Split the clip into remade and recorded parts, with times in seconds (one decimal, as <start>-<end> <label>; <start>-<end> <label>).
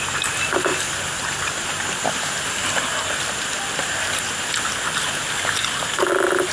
0.0-6.5 recorded